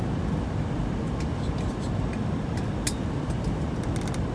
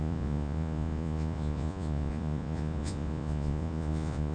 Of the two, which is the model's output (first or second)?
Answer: second